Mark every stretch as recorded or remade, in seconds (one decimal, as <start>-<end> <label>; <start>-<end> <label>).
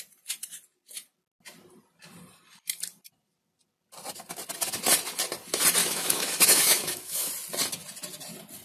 0.0-5.8 recorded; 5.8-7.3 remade; 7.3-8.6 recorded